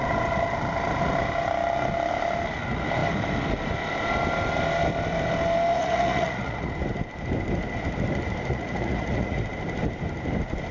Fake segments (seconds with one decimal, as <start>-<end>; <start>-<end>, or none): 5.7-6.7; 8.5-9.4